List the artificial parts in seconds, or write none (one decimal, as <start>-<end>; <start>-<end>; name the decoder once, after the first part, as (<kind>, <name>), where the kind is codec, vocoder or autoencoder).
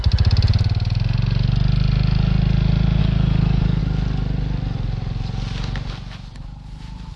3.0-3.8 (codec, DAC)